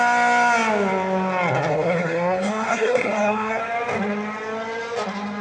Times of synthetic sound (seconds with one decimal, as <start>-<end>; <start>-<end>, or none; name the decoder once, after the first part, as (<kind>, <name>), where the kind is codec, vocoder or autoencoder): 1.7-3.6 (codec, SNAC)